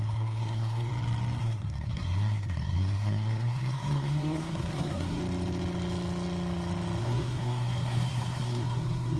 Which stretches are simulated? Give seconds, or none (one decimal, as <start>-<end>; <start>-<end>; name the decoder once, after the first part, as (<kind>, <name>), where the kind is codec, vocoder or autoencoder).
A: 0.0-0.9 (codec, SNAC); 1.4-5.2; 7.0-9.2